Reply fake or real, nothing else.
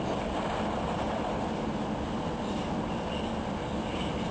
real